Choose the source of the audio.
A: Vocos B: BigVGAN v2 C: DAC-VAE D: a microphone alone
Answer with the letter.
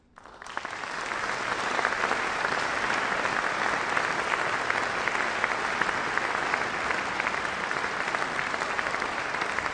D